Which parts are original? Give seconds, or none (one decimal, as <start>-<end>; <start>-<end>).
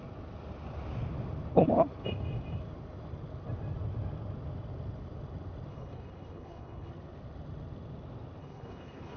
0.0-5.7; 6.9-8.4